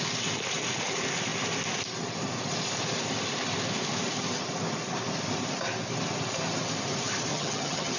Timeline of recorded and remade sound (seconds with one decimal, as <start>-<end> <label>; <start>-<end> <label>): 0.0-7.3 recorded; 7.3-8.0 remade